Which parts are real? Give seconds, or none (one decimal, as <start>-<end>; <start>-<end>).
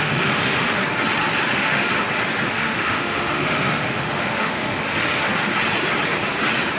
0.8-1.5; 1.9-2.5; 5.3-6.8